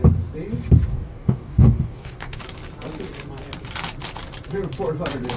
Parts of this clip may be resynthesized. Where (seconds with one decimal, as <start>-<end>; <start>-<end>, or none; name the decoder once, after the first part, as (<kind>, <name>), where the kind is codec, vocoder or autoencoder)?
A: 0.9-2.4 (codec, DAC)